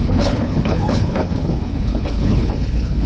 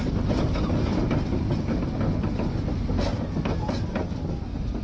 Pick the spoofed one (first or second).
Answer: first